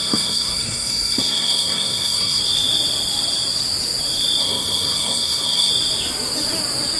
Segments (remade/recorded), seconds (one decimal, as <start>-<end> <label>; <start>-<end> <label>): 0.0-2.4 remade; 2.4-4.4 recorded; 4.4-5.7 remade; 5.7-7.0 recorded